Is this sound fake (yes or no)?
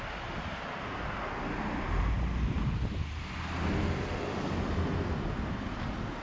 no